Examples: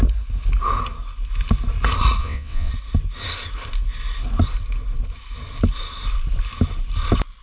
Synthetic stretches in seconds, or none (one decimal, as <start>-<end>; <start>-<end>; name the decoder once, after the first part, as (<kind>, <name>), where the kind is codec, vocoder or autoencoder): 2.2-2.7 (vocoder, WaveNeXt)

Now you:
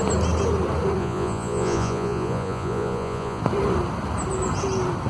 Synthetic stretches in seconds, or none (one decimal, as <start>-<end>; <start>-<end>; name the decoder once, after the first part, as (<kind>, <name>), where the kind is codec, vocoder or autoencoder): 1.0-3.4 (vocoder, Vocos)

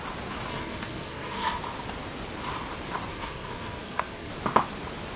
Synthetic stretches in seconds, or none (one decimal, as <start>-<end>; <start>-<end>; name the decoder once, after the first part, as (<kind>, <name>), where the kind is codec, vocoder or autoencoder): 0.5-1.6 (codec, SNAC); 3.1-4.3